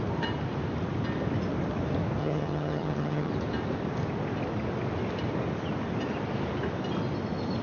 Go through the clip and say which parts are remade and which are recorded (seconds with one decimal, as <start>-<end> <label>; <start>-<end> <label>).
0.0-2.2 recorded; 2.2-3.3 remade; 3.3-7.6 recorded